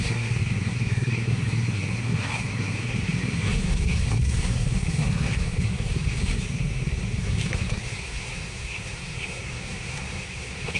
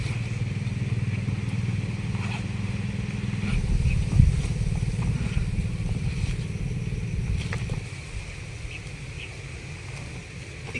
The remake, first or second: first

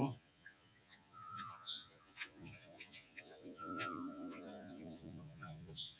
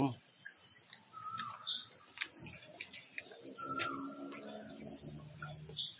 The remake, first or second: first